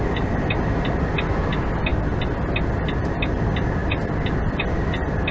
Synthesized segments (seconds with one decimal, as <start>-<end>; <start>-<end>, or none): none